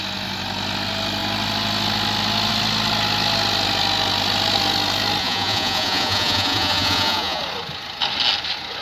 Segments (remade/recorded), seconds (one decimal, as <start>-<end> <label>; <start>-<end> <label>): 0.0-5.2 recorded; 5.2-7.4 remade; 7.4-8.8 recorded